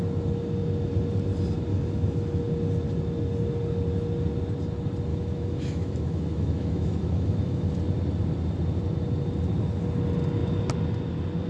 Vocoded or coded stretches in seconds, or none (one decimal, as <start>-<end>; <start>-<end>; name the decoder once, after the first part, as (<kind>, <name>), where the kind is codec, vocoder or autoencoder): 1.7-2.4 (autoencoder, DAC-VAE); 5.1-7.8